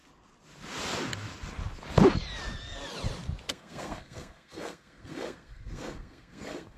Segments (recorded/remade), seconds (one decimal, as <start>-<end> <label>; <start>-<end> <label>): 0.0-3.5 recorded; 3.5-6.8 remade